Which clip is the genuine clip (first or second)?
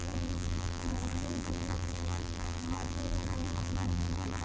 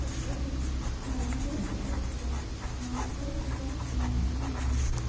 second